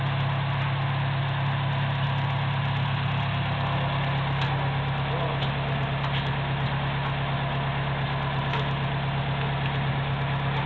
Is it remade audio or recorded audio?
recorded